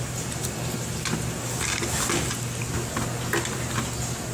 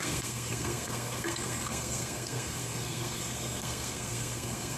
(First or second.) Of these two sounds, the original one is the first